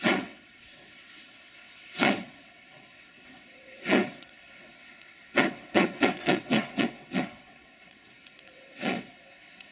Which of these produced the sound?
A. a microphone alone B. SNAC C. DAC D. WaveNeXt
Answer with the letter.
D